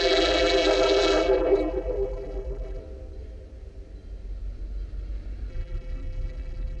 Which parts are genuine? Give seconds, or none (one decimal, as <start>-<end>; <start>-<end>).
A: 2.8-5.5